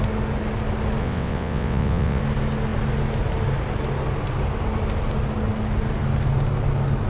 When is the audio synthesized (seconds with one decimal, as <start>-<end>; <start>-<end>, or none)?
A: 1.0-2.2